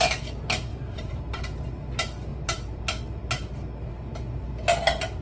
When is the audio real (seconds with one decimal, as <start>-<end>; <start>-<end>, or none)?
0.0-0.7; 1.3-2.3; 2.8-5.2